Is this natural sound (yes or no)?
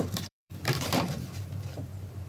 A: no